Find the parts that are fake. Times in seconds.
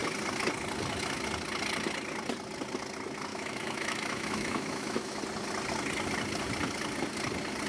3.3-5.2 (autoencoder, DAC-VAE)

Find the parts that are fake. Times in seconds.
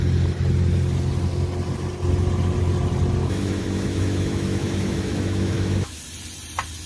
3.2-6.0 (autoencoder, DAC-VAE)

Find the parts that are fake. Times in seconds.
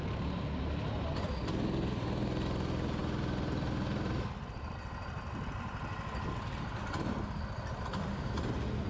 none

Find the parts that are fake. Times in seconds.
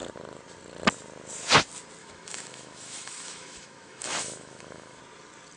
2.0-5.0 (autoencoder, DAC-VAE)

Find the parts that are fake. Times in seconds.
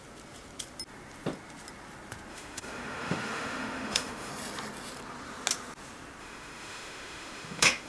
2.3-4.3 (autoencoder, DAC-VAE); 6.2-7.9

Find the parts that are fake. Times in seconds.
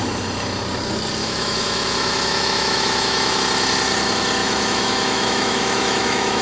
1.2-3.4 (autoencoder, DAC-VAE); 4.4-6.4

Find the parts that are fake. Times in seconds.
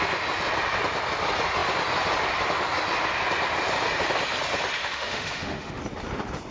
4.8-5.8 (autoencoder, DAC-VAE)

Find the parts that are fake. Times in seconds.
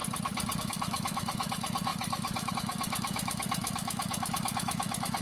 0.6-5.2 (autoencoder, DAC-VAE)